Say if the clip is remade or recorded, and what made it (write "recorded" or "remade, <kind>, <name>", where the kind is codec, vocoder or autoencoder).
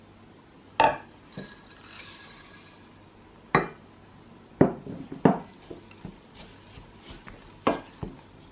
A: recorded